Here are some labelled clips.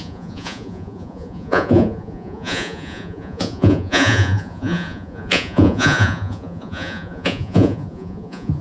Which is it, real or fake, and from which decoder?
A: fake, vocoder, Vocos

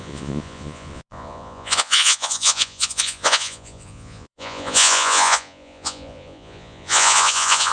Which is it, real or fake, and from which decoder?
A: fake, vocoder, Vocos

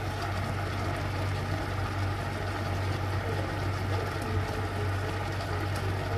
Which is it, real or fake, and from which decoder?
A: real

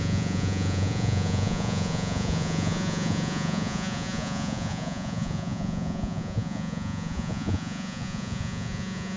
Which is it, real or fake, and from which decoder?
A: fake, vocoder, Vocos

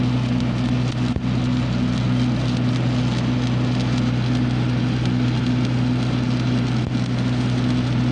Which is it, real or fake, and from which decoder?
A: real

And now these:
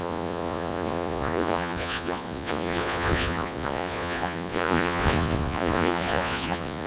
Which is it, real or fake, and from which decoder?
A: fake, vocoder, Vocos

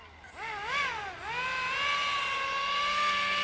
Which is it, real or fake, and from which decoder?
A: real